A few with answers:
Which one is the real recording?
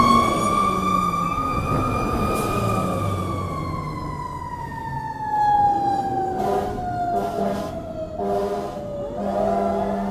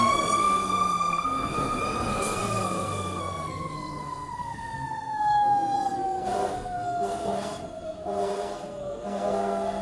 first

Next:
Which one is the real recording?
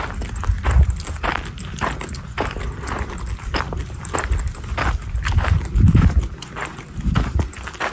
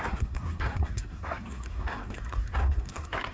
first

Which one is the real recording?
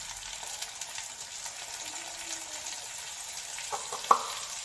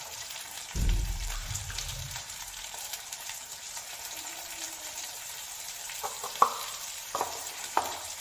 first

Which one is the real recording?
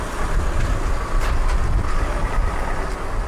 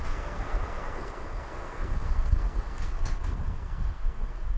first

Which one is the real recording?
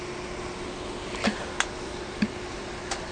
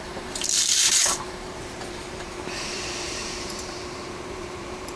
first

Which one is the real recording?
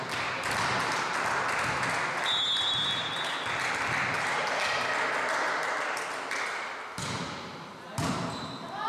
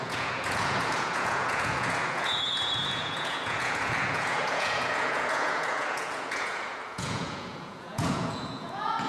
first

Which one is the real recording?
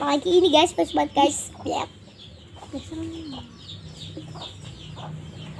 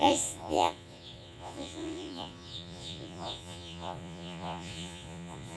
first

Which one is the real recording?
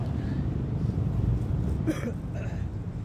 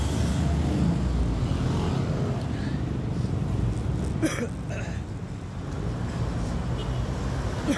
second